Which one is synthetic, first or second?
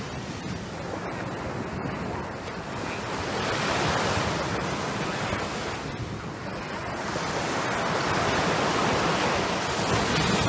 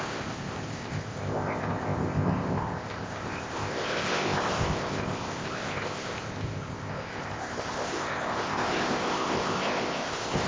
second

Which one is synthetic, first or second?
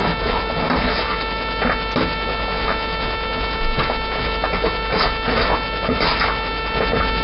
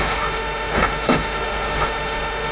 second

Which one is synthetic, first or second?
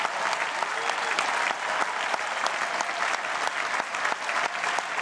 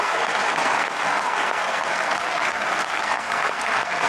second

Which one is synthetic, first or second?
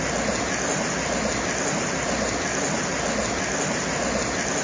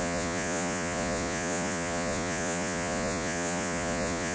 second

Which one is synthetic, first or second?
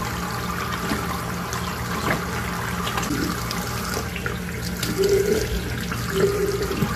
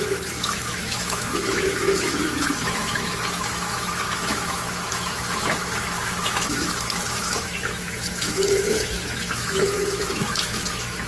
second